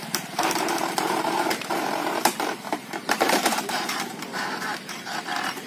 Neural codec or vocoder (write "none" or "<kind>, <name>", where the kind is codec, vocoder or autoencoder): vocoder, BigVGAN v2